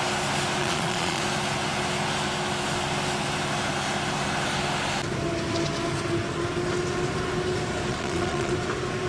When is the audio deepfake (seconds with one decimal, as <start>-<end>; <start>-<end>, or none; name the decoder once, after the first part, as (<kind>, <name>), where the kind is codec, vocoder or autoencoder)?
0.6-1.2 (vocoder, Vocos); 7.9-8.5

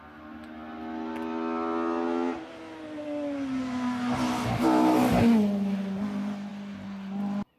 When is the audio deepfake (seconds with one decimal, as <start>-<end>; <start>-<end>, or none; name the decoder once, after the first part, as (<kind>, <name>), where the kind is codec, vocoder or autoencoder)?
none

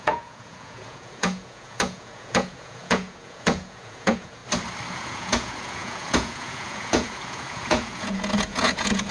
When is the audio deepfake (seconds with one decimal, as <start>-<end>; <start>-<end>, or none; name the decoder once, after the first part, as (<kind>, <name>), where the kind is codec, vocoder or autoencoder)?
0.0-4.4 (vocoder, Vocos); 4.9-9.1

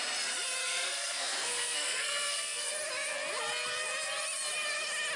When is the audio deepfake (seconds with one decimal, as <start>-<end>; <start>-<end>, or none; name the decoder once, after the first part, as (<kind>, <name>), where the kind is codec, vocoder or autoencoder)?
0.6-2.7 (codec, SNAC)

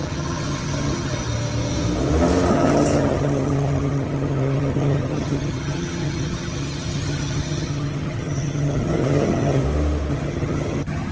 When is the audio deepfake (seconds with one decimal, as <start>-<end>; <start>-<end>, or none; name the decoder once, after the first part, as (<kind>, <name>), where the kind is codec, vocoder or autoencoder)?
0.0-1.2 (vocoder, HiFi-GAN); 2.5-9.6; 10.1-11.1

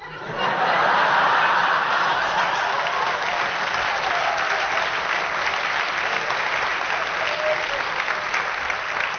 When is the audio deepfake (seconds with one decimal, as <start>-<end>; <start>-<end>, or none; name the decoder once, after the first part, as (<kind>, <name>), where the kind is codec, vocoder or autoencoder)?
0.0-6.7 (vocoder, BigVGAN v2); 8.3-9.2